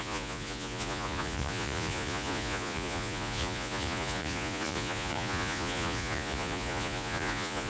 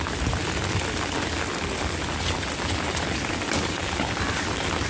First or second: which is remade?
first